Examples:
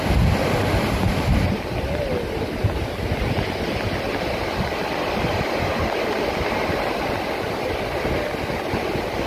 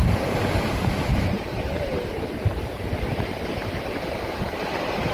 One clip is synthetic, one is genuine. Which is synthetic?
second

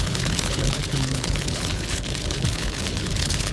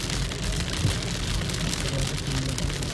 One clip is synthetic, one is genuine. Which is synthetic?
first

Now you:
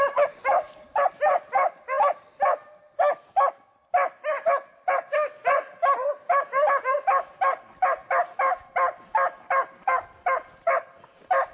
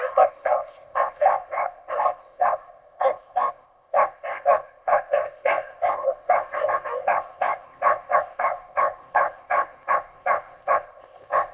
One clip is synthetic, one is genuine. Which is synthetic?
second